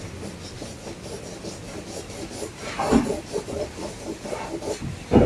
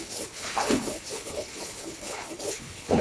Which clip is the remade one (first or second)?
second